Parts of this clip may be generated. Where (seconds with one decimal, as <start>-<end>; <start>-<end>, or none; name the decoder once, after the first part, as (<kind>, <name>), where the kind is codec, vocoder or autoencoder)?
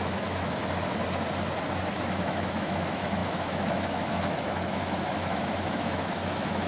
0.0-0.6 (autoencoder, DAC-VAE); 2.2-6.7